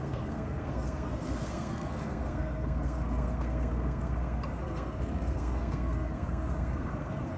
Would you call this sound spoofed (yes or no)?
yes